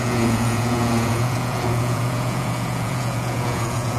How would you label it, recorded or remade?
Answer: remade